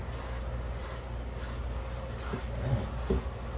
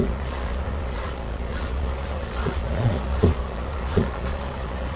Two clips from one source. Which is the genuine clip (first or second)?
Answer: first